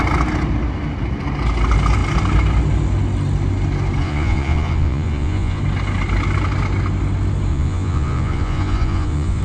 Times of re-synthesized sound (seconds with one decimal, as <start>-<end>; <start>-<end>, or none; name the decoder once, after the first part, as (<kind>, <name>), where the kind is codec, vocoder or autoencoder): 4.0-5.6 (vocoder, Vocos); 7.5-9.4